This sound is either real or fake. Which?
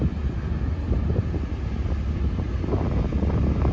real